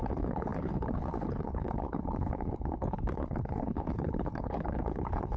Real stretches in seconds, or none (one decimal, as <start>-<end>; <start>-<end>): none